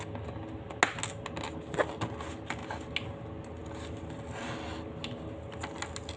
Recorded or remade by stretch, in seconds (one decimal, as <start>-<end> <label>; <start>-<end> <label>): 0.0-6.2 recorded